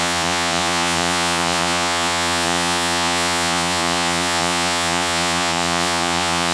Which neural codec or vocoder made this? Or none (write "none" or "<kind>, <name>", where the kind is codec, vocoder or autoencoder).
vocoder, Vocos